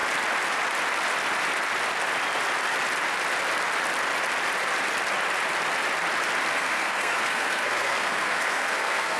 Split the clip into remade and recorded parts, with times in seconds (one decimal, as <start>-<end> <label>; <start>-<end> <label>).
0.0-6.5 recorded; 6.5-9.2 remade